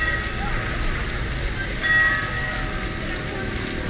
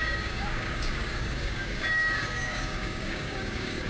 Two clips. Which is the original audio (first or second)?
first